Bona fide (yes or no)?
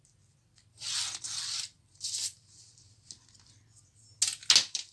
yes